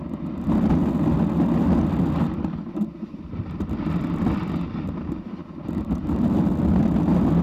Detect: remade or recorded recorded